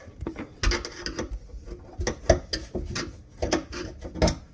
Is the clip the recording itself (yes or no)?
yes